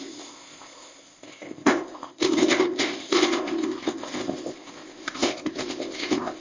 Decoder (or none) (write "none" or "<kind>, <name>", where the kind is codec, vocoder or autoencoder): codec, ZipCodec